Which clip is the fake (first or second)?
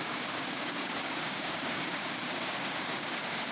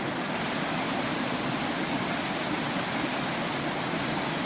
first